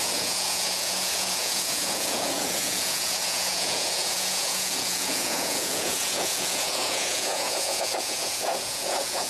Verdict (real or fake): fake